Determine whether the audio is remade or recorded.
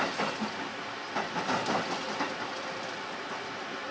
recorded